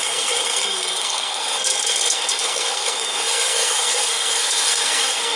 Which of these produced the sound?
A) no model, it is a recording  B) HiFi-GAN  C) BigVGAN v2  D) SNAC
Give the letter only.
D